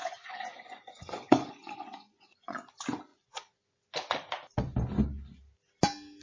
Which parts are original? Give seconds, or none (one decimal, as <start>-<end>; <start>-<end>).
2.7-3.1; 3.9-6.2